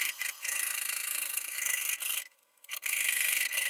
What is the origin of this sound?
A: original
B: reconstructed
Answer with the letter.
B